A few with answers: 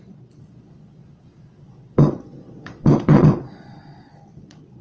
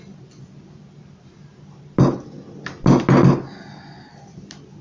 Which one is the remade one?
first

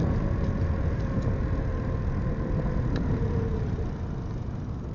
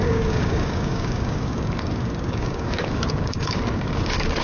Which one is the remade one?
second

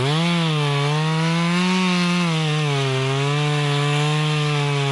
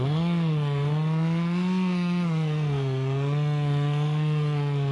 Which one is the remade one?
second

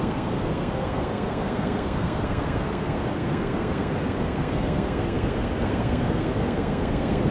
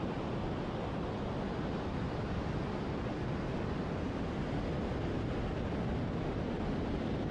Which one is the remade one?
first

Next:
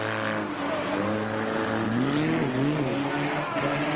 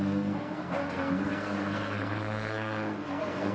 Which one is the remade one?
second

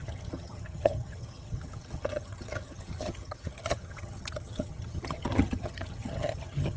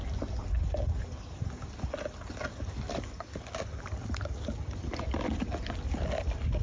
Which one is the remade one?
first